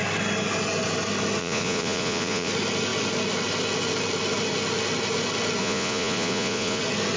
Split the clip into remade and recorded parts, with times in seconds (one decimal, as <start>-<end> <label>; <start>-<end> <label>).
0.0-1.4 recorded; 1.4-2.5 remade; 2.5-5.6 recorded; 5.6-6.8 remade; 6.8-7.2 recorded